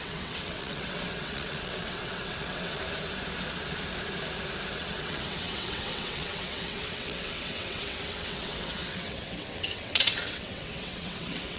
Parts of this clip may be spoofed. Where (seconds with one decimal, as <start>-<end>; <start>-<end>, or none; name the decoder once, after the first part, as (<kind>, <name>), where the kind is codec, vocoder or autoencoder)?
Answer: 0.0-2.8 (vocoder, WaveNeXt); 4.7-11.6